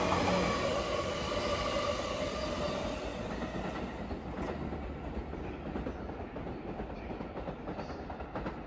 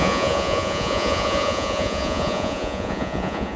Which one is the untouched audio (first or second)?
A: first